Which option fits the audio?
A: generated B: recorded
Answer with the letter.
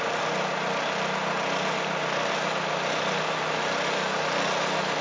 B